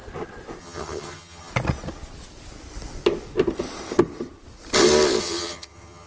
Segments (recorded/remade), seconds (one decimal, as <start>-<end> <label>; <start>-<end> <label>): 0.0-0.6 recorded; 0.6-1.5 remade; 1.5-5.2 recorded; 5.2-6.1 remade